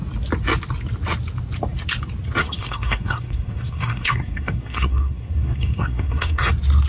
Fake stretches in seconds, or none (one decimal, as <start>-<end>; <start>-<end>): 2.4-6.5